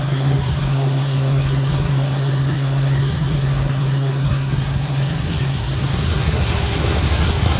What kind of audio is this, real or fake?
fake